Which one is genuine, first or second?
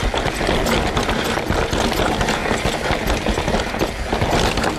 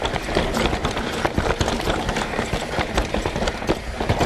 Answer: first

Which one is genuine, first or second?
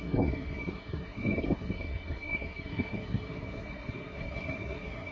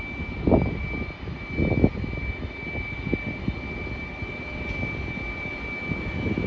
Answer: second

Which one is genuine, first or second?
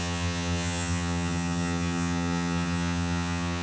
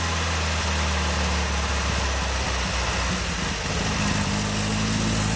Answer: second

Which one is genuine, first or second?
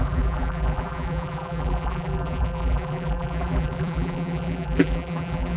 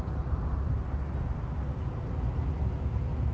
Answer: second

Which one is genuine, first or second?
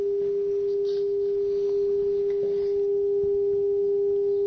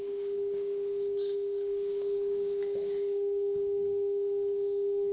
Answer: first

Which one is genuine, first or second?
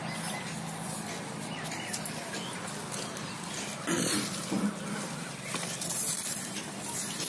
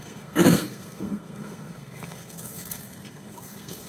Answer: first